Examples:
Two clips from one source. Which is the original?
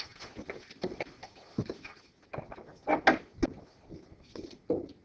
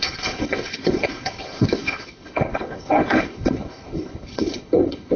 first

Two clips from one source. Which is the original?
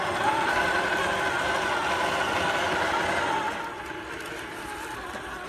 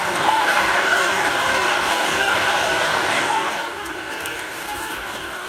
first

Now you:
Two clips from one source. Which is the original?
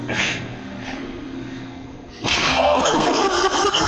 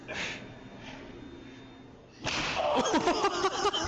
second